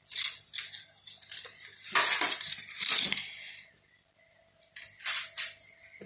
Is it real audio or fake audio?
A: real